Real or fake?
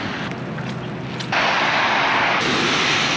real